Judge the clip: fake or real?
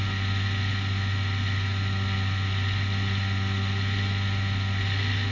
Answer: real